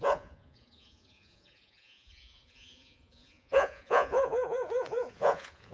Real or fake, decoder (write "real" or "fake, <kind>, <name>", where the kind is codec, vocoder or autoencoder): fake, vocoder, Vocos